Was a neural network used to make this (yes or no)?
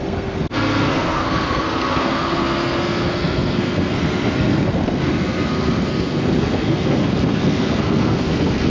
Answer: yes